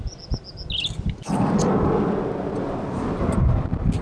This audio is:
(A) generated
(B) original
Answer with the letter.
B